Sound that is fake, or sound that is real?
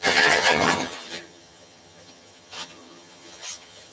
fake